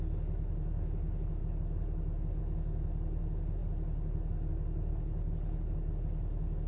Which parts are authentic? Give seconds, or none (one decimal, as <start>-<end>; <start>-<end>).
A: 0.0-4.9; 5.7-6.7